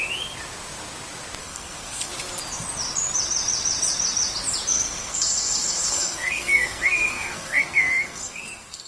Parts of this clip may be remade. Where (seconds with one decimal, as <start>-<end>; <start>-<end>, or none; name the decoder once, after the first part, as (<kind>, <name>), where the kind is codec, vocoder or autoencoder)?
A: 1.4-2.1 (codec, SNAC); 4.7-8.9